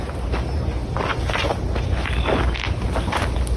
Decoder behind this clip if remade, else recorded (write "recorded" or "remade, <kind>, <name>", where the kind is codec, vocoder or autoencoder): recorded